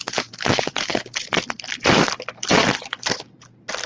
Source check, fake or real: fake